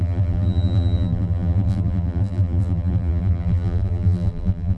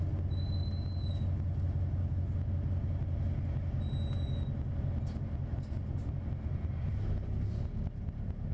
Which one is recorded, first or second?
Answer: second